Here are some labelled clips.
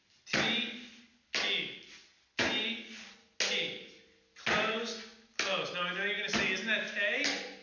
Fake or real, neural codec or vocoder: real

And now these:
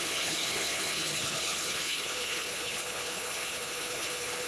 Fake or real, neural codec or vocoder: fake, codec, HILCodec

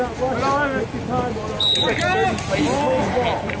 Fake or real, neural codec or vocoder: real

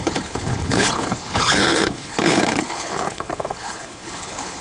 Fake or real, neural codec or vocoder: fake, codec, HILCodec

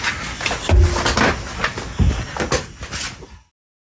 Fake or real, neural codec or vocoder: real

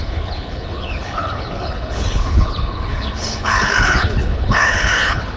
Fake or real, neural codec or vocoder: fake, codec, HILCodec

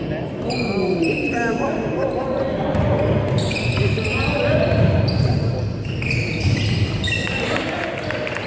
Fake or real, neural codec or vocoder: real